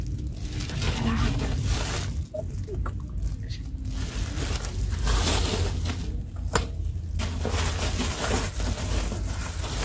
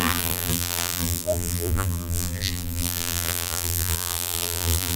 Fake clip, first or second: second